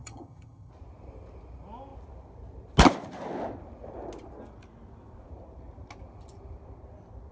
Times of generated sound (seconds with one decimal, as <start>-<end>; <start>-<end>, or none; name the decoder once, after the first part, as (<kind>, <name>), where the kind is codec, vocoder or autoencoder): 0.0-0.7 (vocoder, HiFi-GAN)